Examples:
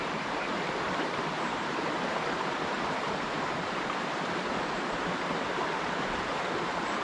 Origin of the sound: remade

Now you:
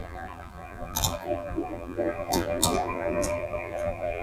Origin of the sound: remade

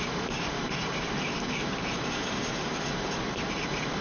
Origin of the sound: remade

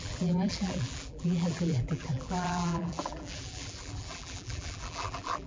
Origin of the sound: remade